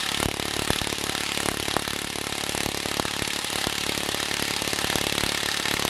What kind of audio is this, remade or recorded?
remade